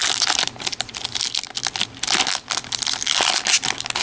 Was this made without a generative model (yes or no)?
yes